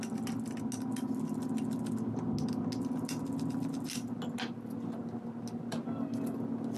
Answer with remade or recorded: recorded